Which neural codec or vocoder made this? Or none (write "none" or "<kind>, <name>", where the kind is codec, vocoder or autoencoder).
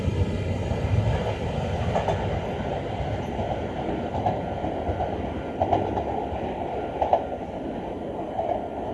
none